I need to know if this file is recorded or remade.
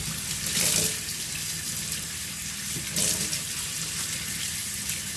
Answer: recorded